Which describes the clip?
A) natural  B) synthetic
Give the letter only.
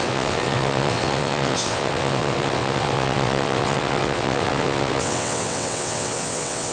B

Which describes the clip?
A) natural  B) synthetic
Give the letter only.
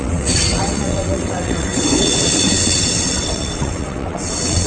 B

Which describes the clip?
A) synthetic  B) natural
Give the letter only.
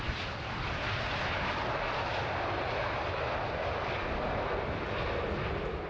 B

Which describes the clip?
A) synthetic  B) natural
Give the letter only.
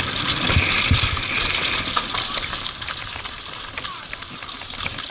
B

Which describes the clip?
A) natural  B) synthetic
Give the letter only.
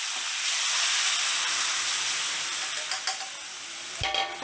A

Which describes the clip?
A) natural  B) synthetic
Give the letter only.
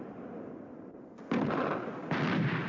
A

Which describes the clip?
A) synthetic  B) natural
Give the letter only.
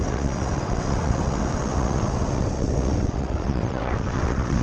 A